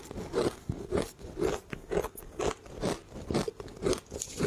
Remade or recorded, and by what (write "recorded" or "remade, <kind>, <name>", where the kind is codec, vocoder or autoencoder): recorded